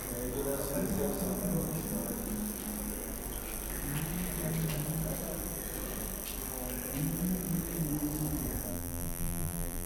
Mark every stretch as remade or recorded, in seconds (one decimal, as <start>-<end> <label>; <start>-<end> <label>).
0.0-8.7 recorded; 8.7-9.9 remade